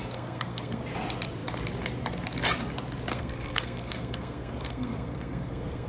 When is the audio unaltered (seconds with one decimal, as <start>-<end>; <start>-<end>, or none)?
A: 0.8-3.1